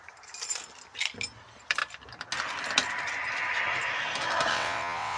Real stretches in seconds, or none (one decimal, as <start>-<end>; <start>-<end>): 0.0-4.5

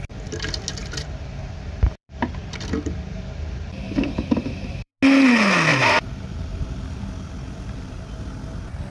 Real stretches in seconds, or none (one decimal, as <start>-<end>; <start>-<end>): 0.0-0.8; 4.9-5.7; 8.0-8.9

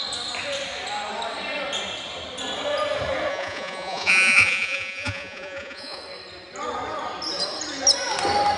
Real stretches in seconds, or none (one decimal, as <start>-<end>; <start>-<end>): 0.0-3.3; 6.0-8.6

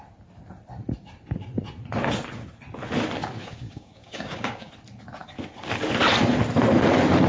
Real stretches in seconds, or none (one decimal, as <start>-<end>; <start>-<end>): 0.0-3.4; 4.7-7.3